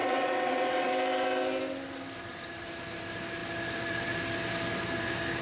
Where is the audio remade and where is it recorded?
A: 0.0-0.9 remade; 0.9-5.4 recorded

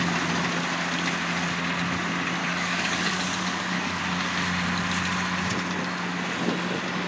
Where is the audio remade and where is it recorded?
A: 0.0-2.4 recorded; 2.4-4.0 remade; 4.0-7.1 recorded